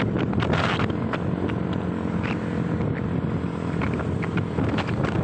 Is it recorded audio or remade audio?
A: recorded